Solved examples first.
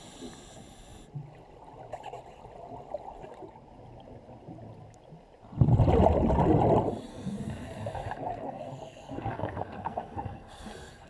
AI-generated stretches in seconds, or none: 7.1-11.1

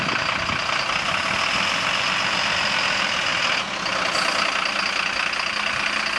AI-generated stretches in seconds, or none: none

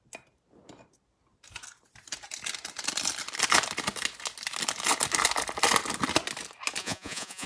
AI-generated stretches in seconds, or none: 6.8-7.5

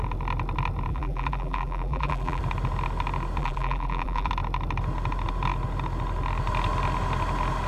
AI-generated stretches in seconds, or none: 0.9-2.4; 3.4-4.3

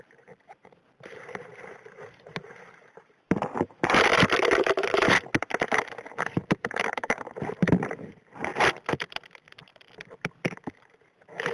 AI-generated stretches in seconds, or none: 0.0-8.5; 10.8-11.5

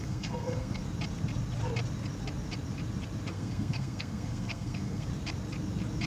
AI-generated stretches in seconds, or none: 0.0-0.8; 3.3-5.1